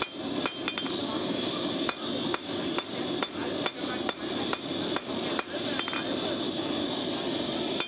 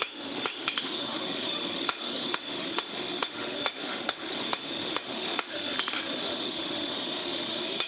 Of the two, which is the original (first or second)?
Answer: first